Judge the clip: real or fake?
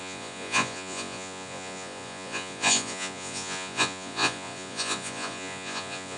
fake